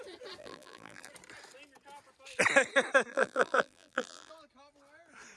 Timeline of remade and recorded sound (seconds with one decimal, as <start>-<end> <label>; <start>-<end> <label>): 0.0-0.4 recorded; 0.4-1.1 remade; 1.1-3.1 recorded; 3.1-4.3 remade; 4.3-5.4 recorded